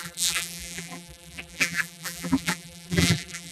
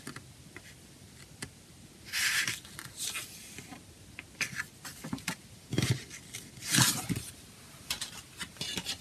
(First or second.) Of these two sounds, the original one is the second